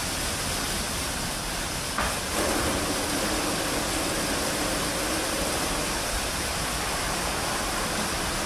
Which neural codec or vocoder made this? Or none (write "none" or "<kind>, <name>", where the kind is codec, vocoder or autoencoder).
none